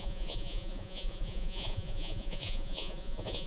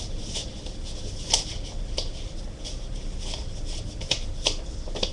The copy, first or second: first